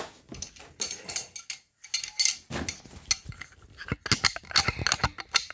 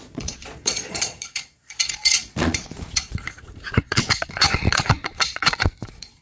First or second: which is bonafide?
first